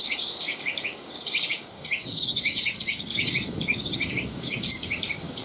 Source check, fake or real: fake